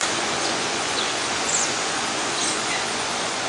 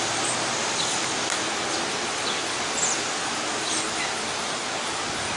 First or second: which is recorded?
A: second